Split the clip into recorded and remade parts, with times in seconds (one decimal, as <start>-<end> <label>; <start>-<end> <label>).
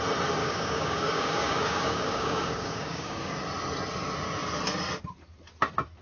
0.0-0.4 recorded; 0.4-3.3 remade; 3.3-6.0 recorded